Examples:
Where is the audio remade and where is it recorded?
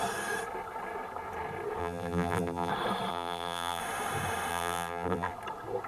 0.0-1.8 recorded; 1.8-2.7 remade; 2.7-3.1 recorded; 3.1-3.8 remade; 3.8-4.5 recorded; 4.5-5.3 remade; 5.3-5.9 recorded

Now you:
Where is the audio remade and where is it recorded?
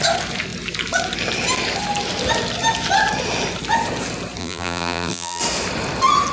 0.0-4.4 recorded; 4.4-5.4 remade; 5.4-6.3 recorded